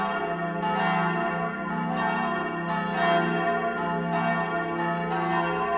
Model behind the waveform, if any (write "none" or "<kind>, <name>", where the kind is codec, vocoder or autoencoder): none